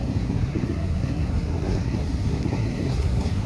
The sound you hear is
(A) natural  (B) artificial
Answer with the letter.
B